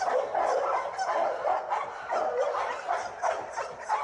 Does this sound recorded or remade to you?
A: recorded